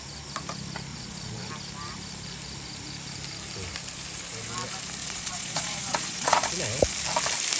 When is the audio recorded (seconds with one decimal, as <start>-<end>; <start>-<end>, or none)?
0.0-0.9; 1.5-5.0; 6.5-7.6